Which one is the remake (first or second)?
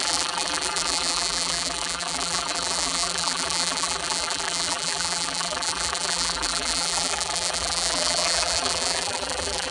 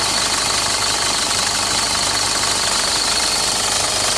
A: first